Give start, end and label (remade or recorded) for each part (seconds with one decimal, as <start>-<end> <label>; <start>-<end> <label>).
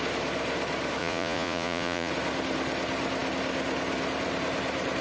0.0-1.0 recorded; 1.0-2.1 remade; 2.1-5.0 recorded